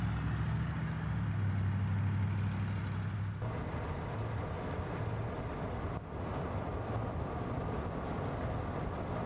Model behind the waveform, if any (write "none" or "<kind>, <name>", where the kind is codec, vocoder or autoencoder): none